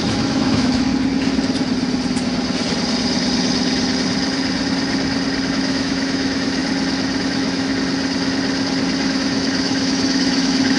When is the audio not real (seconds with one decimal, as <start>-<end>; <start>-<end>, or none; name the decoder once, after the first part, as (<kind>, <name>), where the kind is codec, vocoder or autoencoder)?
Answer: 0.0-0.9 (autoencoder, DAC-VAE); 5.5-6.6; 7.2-7.7; 9.1-10.8